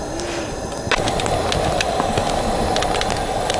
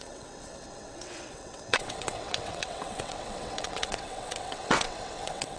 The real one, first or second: first